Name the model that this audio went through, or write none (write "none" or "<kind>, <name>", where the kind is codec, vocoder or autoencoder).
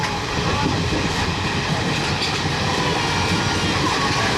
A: none